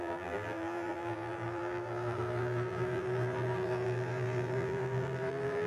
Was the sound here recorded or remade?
remade